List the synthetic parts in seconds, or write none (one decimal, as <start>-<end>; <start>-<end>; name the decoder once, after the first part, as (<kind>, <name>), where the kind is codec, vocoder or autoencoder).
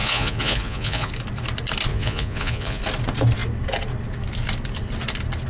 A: 0.0-1.1 (vocoder, Vocos); 1.9-2.8